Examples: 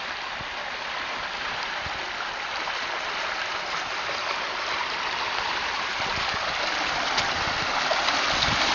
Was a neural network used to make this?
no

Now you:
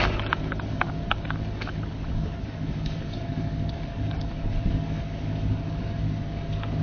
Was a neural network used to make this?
yes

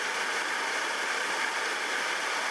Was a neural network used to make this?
no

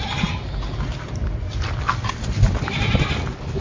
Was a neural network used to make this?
no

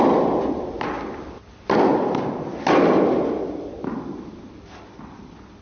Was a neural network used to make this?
no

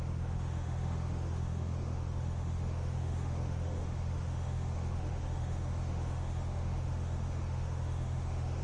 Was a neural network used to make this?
yes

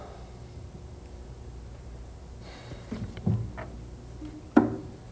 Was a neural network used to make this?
no